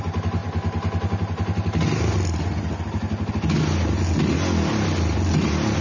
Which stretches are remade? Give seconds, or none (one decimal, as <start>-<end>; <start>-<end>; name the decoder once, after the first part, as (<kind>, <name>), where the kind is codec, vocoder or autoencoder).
none